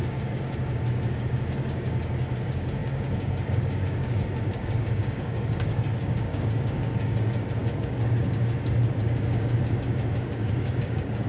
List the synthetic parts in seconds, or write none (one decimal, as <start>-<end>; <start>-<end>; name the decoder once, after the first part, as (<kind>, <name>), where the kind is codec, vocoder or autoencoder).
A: 0.0-11.3 (codec, DAC)